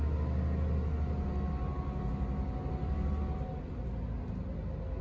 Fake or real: real